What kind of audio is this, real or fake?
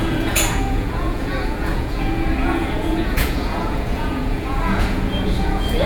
fake